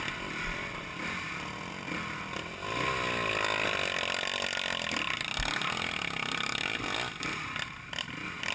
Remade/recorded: recorded